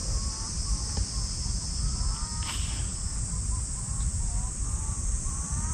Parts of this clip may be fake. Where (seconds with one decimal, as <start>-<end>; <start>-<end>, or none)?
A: 1.6-2.9; 5.2-5.7